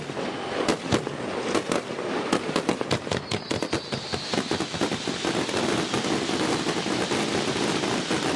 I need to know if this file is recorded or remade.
recorded